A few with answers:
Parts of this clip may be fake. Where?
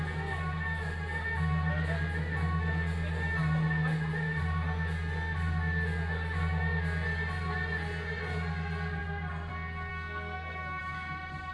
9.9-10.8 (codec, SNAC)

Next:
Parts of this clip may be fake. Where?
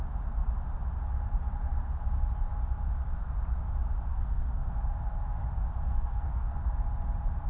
4.1-4.7 (codec, SNAC); 5.9-6.7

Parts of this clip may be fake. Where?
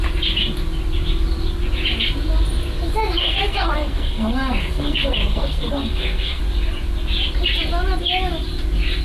3.2-6.4 (codec, SNAC)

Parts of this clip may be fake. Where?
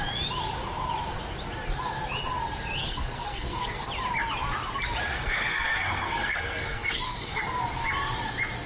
2.8-3.9 (codec, SNAC); 5.1-7.4